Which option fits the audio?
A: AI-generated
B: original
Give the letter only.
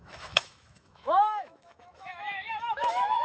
A